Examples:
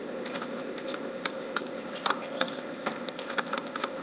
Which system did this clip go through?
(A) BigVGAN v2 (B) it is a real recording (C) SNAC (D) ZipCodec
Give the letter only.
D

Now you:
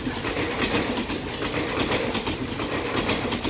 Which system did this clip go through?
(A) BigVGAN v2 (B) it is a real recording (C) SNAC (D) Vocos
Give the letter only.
B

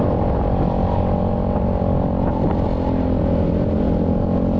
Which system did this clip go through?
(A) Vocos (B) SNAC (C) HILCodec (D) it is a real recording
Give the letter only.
D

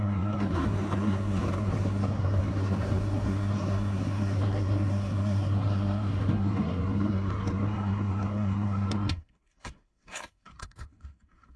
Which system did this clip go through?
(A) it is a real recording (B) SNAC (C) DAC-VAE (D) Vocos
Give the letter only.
B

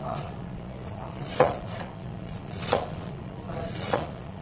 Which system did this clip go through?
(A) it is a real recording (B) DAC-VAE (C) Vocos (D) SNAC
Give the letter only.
C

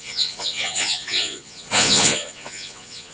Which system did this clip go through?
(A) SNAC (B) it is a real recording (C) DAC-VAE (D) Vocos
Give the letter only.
D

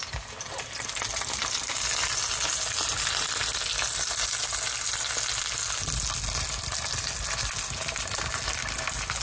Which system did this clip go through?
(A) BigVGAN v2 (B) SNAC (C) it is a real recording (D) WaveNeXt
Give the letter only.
C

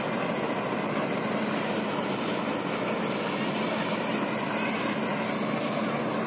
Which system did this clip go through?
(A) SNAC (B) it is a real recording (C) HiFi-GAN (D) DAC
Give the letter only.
B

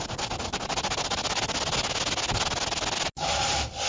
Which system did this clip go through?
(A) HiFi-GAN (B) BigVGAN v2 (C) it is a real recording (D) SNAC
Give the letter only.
C